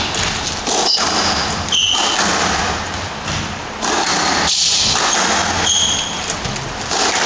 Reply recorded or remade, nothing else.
recorded